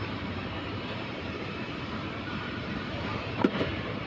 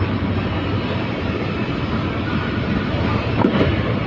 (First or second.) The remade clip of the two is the first